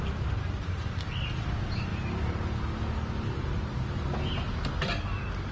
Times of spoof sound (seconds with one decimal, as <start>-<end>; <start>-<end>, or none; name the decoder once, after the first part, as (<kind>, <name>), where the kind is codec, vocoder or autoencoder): none